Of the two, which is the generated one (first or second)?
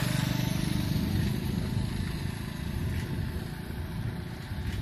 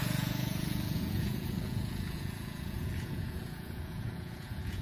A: second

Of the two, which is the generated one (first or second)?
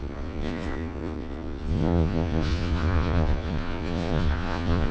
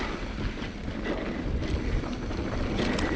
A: first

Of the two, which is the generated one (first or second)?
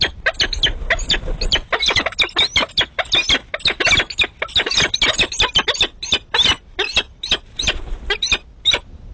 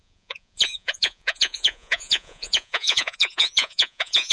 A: second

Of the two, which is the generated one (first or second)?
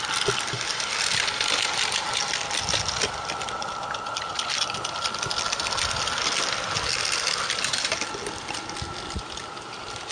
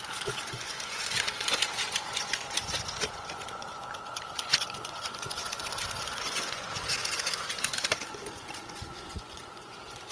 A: second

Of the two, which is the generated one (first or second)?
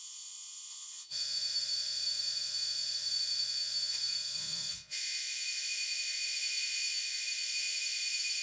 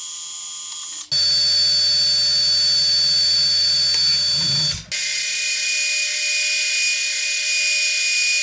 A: first